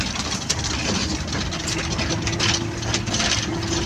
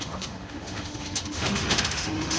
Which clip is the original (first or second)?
first